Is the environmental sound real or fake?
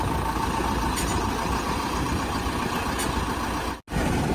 real